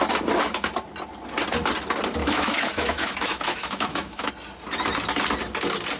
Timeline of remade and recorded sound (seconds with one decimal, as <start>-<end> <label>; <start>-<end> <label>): 0.0-2.2 recorded; 2.2-4.3 remade; 4.3-6.0 recorded